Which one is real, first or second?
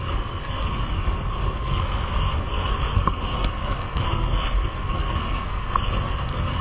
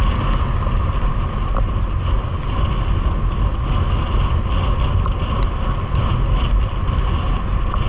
second